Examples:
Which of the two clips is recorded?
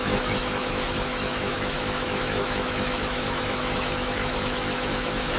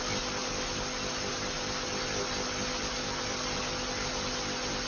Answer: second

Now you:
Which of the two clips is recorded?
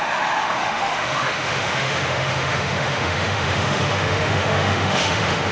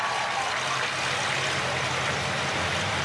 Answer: second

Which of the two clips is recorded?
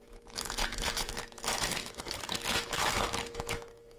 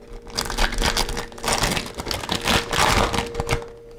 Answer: second